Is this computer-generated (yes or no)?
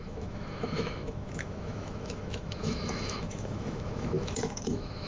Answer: yes